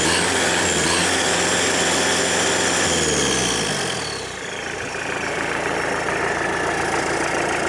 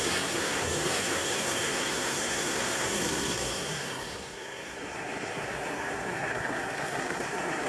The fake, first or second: second